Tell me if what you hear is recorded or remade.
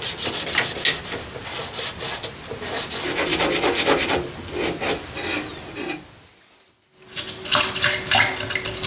recorded